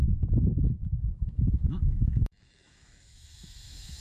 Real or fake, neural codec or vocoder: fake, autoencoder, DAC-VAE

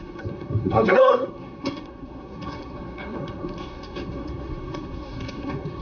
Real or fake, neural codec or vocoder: fake, codec, SNAC